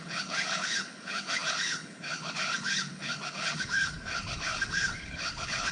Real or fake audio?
fake